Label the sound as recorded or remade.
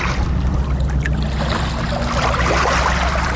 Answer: recorded